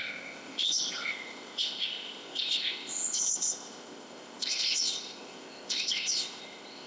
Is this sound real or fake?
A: fake